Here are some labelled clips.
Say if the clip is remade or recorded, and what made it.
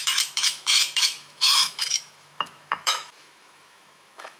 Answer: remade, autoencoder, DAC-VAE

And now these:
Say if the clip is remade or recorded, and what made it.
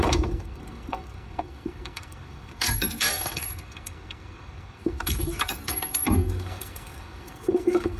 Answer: remade, codec, SNAC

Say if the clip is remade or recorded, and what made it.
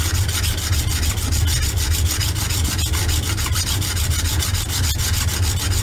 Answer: recorded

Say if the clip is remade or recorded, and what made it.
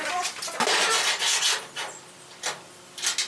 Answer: recorded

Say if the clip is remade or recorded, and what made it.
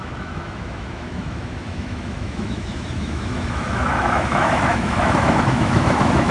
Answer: remade, autoencoder, DAC-VAE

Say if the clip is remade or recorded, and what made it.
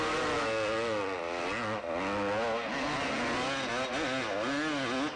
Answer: recorded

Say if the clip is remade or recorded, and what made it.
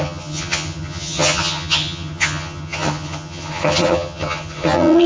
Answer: remade, vocoder, HiFi-GAN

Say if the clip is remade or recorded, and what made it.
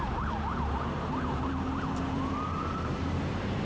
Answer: remade, vocoder, BigVGAN v2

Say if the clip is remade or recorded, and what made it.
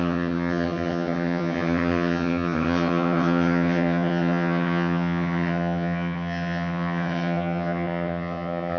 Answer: remade, vocoder, HiFi-GAN